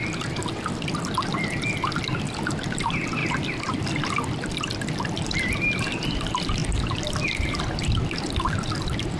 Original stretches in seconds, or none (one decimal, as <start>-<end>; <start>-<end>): 0.0-3.2; 5.8-9.2